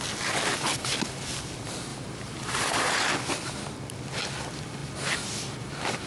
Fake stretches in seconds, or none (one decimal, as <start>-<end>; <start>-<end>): 1.9-2.9

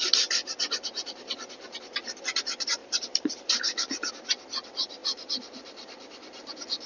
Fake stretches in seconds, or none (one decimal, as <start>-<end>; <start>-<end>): 2.8-4.1; 5.0-6.9

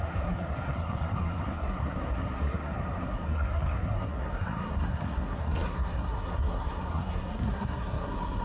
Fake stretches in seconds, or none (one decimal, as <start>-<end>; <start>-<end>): 0.0-8.4

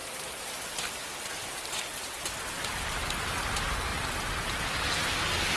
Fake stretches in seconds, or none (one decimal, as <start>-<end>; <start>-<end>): none

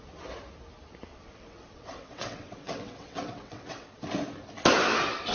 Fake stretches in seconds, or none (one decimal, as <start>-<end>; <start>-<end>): 1.1-4.0

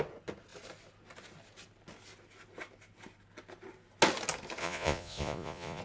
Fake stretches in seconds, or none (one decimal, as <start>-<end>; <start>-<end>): 4.6-5.8

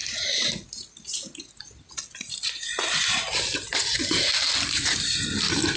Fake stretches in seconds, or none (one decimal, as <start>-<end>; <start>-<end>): 3.9-4.5